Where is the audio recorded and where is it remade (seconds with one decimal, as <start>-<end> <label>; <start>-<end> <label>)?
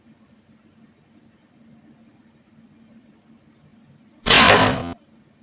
0.0-5.4 recorded